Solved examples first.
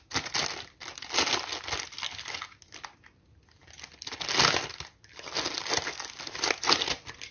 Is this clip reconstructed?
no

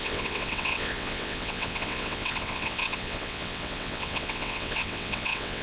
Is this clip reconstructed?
yes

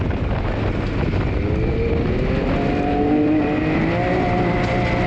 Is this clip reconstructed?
no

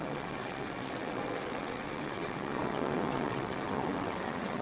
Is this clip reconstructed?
yes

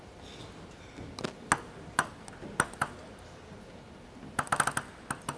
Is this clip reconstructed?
no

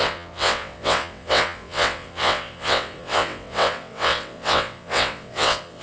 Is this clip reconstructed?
yes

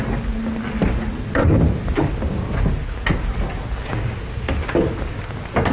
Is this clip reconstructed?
no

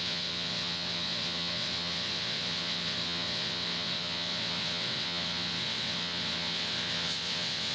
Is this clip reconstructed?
yes